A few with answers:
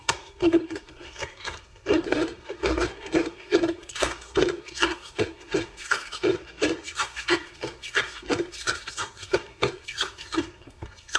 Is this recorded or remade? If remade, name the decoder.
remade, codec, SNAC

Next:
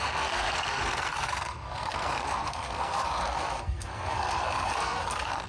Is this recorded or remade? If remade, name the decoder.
remade, codec, SNAC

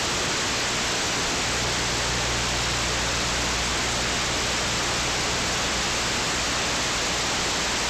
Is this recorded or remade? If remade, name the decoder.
recorded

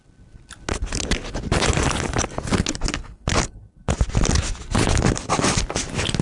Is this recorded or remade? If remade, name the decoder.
recorded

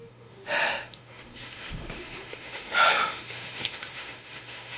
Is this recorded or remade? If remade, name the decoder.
remade, autoencoder, DAC-VAE